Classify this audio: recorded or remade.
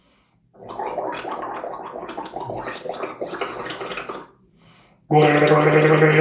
recorded